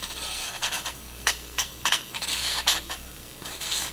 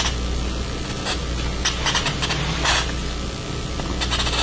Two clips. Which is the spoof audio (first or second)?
first